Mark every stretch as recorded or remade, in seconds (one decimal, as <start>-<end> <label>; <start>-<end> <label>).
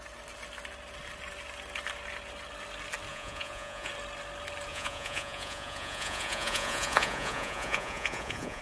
0.0-3.1 recorded; 3.1-3.9 remade; 3.9-4.7 recorded; 4.7-8.6 remade